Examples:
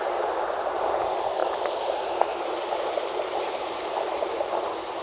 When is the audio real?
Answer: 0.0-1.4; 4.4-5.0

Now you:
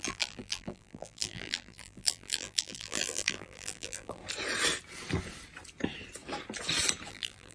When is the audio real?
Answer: 4.2-7.1

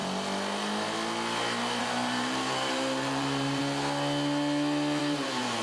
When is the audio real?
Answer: 0.0-1.8; 3.6-5.0

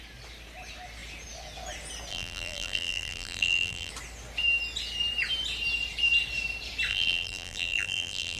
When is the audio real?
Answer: 0.0-2.1; 3.9-6.9

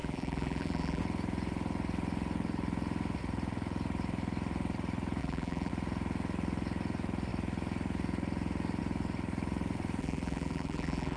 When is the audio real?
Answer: 1.0-5.2; 5.7-10.0